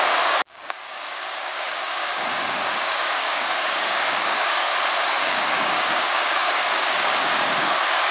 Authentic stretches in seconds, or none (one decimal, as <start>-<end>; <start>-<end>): 4.7-5.2